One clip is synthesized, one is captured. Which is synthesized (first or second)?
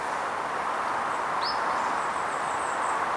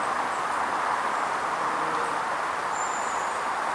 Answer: second